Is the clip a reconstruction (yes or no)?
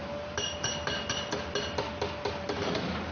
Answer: no